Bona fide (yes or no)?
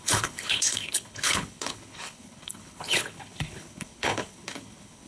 no